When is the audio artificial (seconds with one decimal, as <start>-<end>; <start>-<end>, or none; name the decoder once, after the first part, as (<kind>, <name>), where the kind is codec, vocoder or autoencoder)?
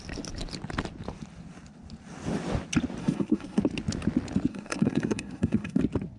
3.0-3.6 (codec, SNAC); 4.5-5.8